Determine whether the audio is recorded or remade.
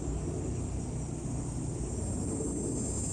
recorded